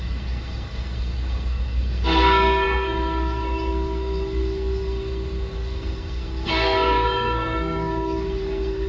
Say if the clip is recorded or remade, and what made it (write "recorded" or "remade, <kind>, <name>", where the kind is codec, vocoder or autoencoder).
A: remade, codec, SNAC